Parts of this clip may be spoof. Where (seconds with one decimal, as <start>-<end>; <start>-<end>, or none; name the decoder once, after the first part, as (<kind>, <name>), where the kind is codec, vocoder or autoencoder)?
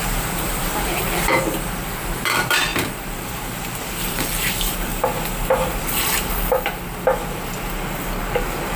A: 0.0-4.9 (vocoder, BigVGAN v2); 6.3-6.7; 8.2-8.8